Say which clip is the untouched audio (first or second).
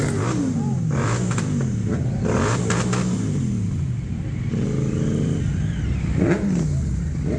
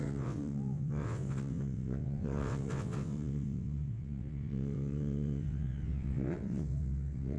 first